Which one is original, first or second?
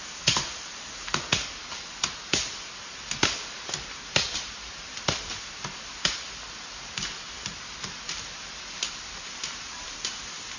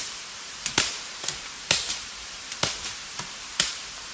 first